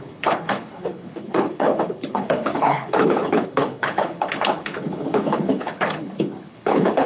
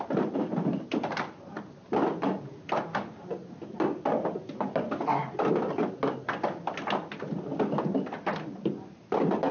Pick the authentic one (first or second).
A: second